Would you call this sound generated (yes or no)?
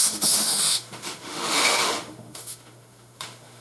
yes